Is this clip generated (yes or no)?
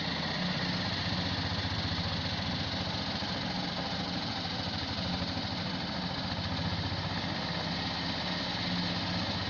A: no